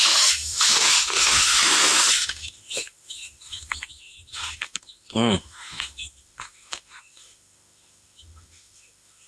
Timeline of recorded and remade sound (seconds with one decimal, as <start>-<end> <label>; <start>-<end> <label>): 0.0-9.3 remade